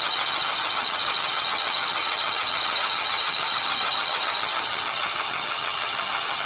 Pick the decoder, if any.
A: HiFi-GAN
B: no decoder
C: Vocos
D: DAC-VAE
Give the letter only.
A